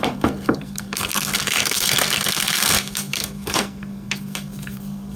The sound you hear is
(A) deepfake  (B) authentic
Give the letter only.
A